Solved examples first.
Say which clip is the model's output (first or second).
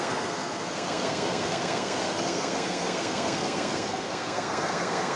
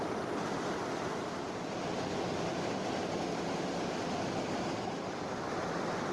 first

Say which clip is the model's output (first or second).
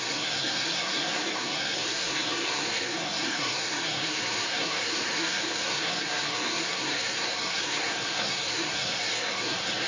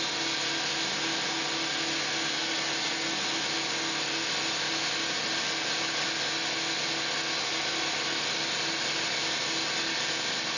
first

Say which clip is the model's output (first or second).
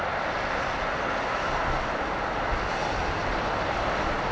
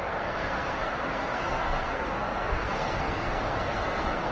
second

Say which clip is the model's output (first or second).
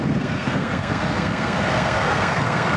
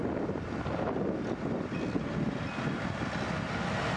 first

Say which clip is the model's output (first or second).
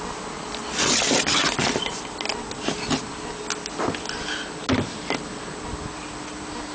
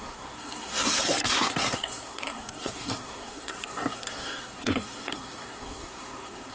second